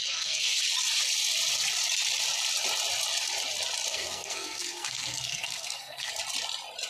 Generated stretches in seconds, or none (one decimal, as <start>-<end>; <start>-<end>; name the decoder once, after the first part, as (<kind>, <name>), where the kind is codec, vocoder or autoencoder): 0.0-0.6 (codec, SNAC); 3.9-6.1